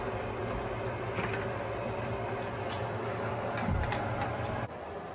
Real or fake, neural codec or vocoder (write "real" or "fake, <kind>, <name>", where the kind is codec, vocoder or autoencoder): real